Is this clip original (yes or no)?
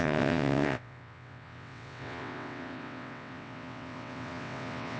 no